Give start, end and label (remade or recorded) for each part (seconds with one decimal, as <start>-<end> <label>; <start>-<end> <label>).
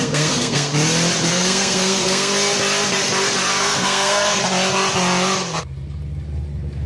0.0-0.7 remade; 0.7-1.3 recorded; 1.3-2.3 remade; 2.3-3.5 recorded; 3.5-4.4 remade; 4.4-6.9 recorded